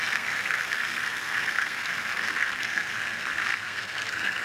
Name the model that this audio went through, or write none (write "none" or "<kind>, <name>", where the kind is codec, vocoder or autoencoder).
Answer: codec, SNAC